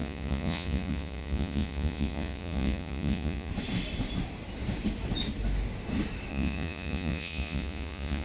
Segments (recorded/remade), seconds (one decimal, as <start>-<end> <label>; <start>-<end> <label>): 0.0-3.5 remade; 3.5-6.3 recorded; 6.3-8.2 remade